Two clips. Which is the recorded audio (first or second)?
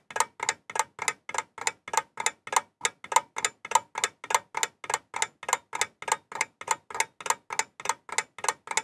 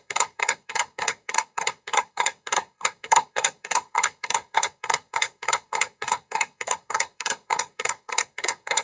first